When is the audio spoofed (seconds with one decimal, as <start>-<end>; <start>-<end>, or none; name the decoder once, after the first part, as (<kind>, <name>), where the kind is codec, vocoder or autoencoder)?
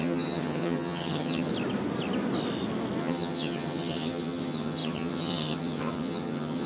0.0-1.5 (vocoder, HiFi-GAN); 3.0-6.7